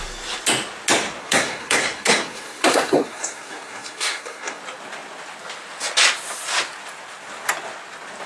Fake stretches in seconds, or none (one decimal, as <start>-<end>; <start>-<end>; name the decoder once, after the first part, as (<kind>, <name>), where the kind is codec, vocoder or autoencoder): 1.2-4.6 (codec, SNAC)